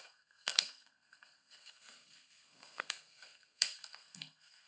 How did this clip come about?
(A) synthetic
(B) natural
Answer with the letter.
A